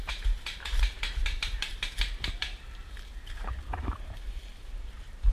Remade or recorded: remade